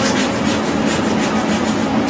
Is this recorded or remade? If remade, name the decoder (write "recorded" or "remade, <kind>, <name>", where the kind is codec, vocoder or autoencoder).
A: recorded